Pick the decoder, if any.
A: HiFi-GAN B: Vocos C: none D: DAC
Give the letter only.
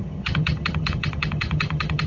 A